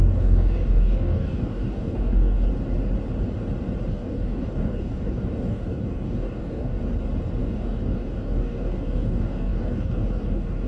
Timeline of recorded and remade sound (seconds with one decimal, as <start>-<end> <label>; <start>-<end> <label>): 0.0-2.5 remade; 2.5-3.9 recorded; 3.9-6.8 remade; 6.8-7.4 recorded; 7.4-10.7 remade